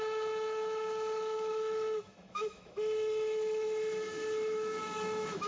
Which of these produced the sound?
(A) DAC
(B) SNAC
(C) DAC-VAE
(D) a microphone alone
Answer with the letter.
C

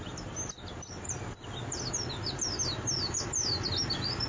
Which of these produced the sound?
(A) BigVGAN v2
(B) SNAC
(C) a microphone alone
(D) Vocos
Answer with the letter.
C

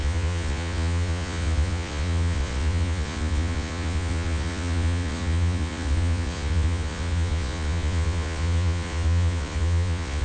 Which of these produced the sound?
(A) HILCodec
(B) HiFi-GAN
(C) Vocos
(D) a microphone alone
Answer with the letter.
C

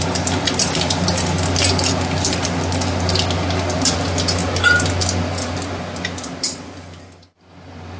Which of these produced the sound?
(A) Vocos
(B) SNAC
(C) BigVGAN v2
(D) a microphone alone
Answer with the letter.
D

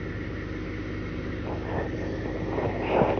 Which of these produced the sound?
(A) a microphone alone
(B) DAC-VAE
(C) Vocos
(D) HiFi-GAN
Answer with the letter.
A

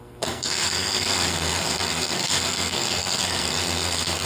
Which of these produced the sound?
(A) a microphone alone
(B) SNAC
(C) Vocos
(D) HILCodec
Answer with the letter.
B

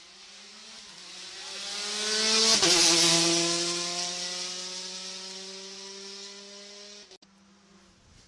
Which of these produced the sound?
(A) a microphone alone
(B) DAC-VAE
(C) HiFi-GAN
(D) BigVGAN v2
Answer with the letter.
A